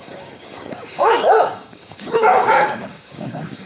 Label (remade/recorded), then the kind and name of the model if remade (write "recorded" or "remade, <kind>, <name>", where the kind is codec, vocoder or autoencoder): remade, codec, DAC